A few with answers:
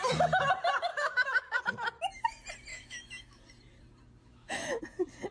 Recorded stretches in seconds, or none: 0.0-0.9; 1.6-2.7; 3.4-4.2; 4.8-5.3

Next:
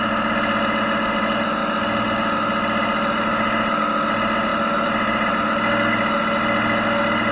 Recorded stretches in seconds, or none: 0.0-4.5; 5.4-7.3

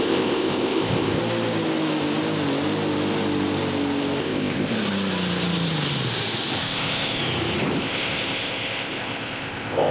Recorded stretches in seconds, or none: 1.2-4.2; 4.7-6.6; 7.2-7.8

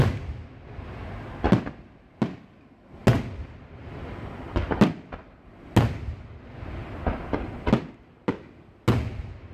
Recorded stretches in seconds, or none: 0.0-9.5

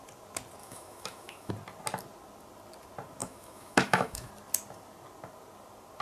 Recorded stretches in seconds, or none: 0.0-0.6; 1.5-3.2; 4.3-6.0

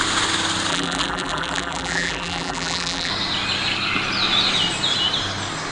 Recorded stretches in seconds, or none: 0.0-0.7; 3.1-5.7

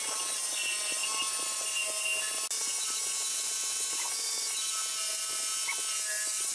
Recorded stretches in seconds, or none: 0.0-6.5

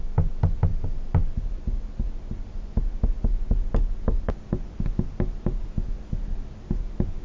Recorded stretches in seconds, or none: 0.0-7.2